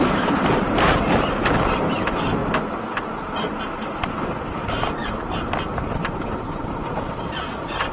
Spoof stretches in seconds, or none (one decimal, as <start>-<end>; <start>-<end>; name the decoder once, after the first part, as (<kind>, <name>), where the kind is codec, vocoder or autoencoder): none

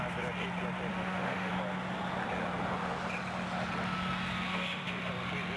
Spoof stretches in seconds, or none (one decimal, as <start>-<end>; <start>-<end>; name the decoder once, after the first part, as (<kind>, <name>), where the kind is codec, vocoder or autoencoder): 0.9-1.5 (autoencoder, DAC-VAE); 4.5-5.1

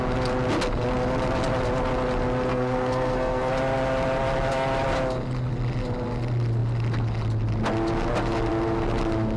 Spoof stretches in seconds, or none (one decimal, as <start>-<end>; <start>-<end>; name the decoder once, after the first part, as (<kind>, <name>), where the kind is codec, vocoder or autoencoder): 2.5-3.5 (codec, SNAC)

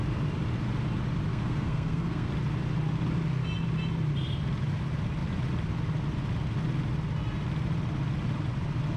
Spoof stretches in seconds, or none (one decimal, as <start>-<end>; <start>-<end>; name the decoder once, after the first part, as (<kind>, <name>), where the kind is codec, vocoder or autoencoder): 1.3-2.3 (codec, SNAC)

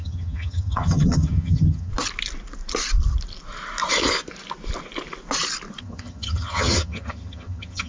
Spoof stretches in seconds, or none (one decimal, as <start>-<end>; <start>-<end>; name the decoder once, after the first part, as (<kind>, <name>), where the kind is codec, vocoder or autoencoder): 0.0-1.9 (vocoder, HiFi-GAN); 5.8-7.9